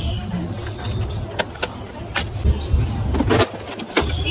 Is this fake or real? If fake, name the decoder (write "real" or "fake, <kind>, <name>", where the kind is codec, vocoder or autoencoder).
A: real